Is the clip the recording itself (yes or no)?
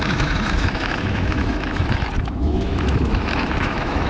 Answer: no